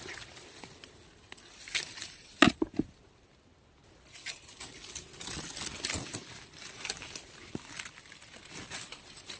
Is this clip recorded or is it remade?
recorded